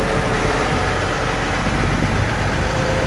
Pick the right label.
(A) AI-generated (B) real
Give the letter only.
A